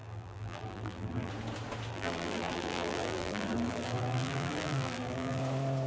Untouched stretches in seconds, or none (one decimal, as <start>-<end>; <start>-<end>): 1.3-1.9; 5.4-5.9